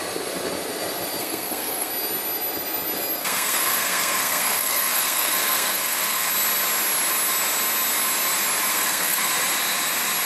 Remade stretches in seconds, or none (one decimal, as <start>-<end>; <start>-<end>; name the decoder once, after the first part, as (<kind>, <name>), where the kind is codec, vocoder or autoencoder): 1.2-1.9 (codec, SNAC); 3.2-6.3; 8.7-9.3